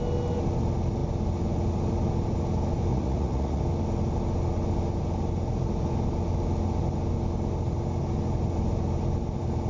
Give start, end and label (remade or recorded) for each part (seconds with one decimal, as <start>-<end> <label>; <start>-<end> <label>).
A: 0.0-2.9 recorded; 2.9-3.6 remade; 3.6-9.7 recorded